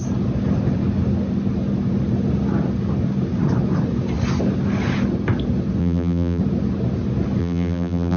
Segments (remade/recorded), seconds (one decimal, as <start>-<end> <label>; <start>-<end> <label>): 0.0-5.8 recorded; 5.8-6.4 remade; 6.4-7.4 recorded; 7.4-8.2 remade